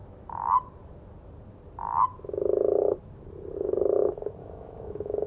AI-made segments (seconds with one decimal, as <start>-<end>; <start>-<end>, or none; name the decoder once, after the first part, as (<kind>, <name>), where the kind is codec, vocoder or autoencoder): 4.4-5.3 (autoencoder, DAC-VAE)